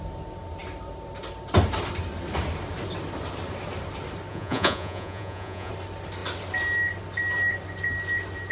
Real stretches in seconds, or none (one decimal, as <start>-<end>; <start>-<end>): 0.0-4.3; 5.7-8.5